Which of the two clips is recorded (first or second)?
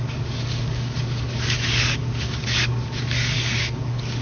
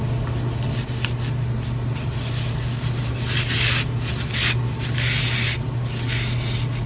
second